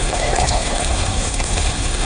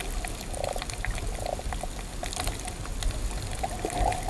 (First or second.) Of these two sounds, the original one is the second